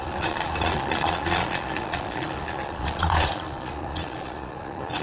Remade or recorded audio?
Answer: remade